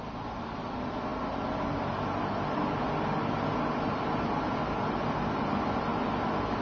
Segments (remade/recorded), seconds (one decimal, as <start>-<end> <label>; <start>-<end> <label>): 0.0-6.6 recorded